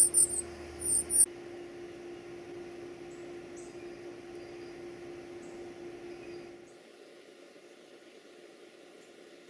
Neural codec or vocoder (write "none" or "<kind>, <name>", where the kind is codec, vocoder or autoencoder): none